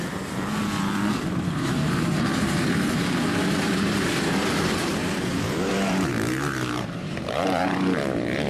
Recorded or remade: remade